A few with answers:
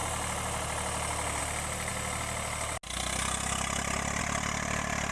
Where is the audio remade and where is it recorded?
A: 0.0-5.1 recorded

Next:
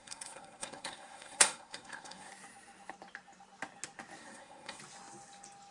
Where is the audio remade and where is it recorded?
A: 0.0-2.3 remade; 2.3-4.2 recorded; 4.2-4.8 remade; 4.8-5.7 recorded

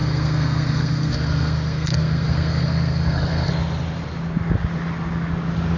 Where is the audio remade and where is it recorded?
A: 0.0-3.5 remade; 3.5-5.8 recorded

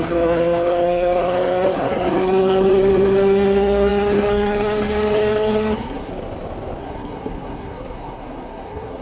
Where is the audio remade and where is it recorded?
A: 0.0-6.1 remade; 6.1-6.8 recorded; 6.8-9.0 remade

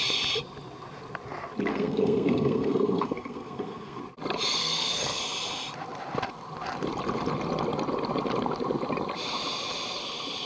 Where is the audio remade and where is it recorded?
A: 0.0-1.7 recorded; 1.7-4.0 remade; 4.0-4.6 recorded; 4.6-5.2 remade; 5.2-10.5 recorded